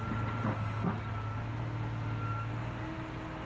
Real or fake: real